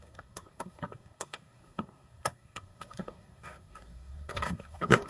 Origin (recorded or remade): remade